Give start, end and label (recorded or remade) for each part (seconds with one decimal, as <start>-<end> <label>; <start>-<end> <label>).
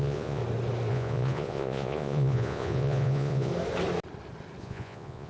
0.0-0.4 remade; 0.4-0.9 recorded; 0.9-3.5 remade; 3.5-4.6 recorded; 4.6-5.3 remade